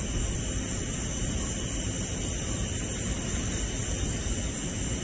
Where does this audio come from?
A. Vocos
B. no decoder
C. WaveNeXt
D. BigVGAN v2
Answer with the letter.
B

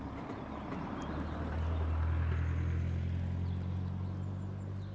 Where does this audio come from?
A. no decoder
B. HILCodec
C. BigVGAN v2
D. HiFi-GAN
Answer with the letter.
A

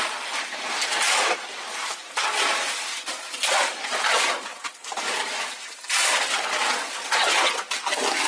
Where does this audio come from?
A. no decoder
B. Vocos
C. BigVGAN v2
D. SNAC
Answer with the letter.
A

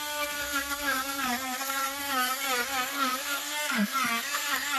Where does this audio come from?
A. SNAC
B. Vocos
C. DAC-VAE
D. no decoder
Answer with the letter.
A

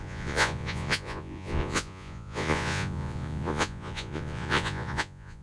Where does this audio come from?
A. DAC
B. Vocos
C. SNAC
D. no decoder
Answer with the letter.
B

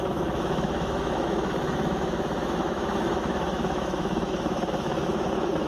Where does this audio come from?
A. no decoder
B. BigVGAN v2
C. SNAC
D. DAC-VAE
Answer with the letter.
D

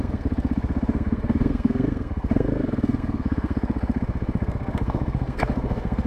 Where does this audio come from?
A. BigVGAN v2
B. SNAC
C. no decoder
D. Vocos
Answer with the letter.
B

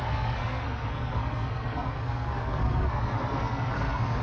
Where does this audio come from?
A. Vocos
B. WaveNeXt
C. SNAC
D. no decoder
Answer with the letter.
C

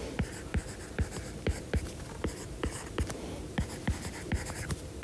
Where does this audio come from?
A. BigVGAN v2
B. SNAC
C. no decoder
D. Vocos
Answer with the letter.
C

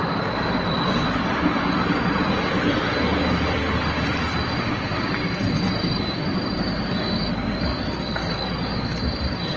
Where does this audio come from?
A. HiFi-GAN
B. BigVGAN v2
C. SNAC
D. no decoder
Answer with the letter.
D